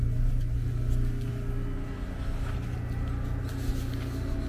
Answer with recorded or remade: recorded